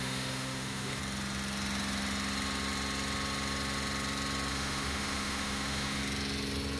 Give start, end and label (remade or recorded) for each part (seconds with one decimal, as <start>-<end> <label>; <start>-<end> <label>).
0.0-1.0 remade; 1.0-4.5 recorded; 4.5-6.0 remade; 6.0-6.8 recorded